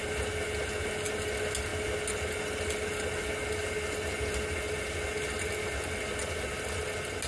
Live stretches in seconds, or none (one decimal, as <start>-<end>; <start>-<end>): 0.0-7.3

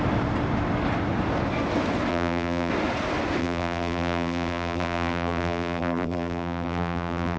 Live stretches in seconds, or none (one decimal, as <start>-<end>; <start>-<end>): 0.0-2.1; 2.7-3.4